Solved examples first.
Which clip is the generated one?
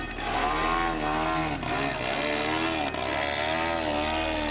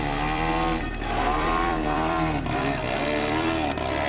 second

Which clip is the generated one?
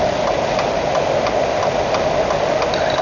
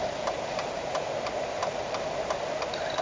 second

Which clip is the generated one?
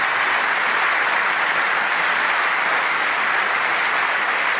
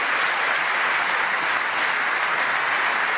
first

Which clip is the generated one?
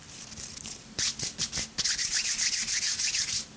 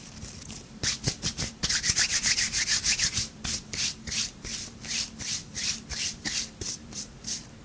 second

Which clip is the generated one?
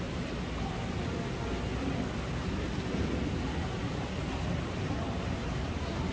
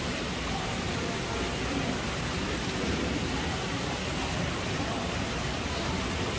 second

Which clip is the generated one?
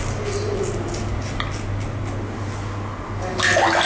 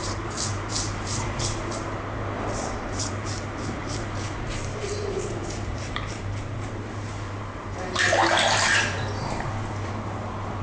second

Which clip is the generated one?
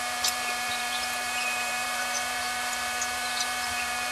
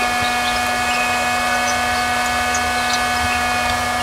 first